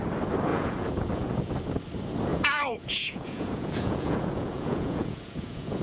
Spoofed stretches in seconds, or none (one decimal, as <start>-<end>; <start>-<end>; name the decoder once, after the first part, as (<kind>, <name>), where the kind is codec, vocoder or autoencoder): 0.5-1.5 (vocoder, Vocos); 2.3-5.8